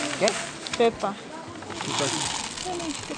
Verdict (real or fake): real